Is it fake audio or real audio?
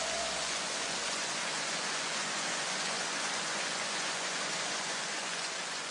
fake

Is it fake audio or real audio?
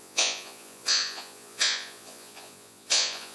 fake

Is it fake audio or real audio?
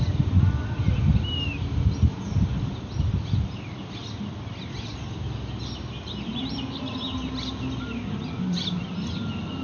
real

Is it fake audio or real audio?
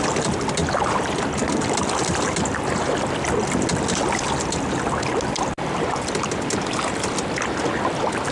real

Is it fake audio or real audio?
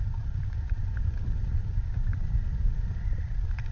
real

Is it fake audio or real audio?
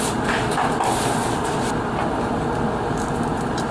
real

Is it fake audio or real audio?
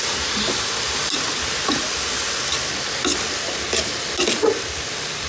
real